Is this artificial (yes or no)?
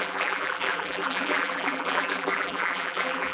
yes